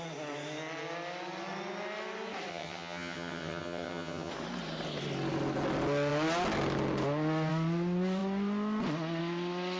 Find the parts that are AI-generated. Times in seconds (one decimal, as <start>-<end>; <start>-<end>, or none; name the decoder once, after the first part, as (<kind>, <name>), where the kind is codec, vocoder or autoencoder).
2.5-4.3 (vocoder, HiFi-GAN)